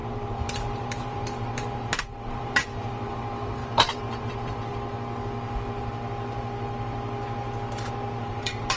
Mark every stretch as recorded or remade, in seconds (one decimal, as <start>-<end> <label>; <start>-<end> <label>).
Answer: 0.0-4.7 remade; 4.7-8.2 recorded; 8.2-8.8 remade